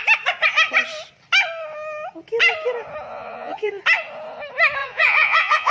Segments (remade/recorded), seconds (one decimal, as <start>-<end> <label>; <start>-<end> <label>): 0.0-3.1 recorded; 3.1-3.7 remade; 3.7-4.8 recorded; 4.8-5.7 remade